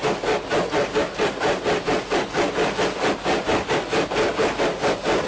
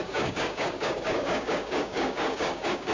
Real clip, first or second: first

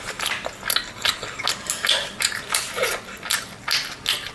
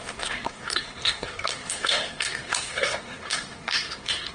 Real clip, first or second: first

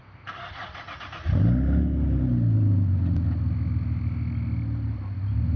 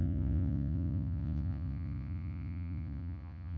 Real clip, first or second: first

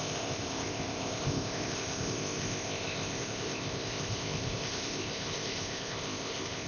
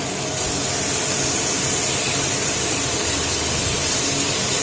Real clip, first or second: second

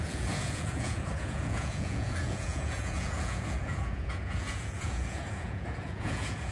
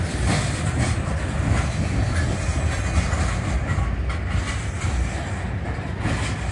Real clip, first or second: second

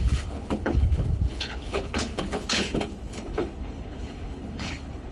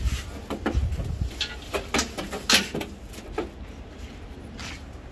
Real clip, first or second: second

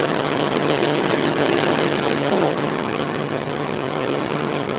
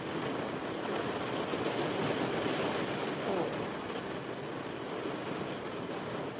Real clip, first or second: second